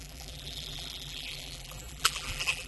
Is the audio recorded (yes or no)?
no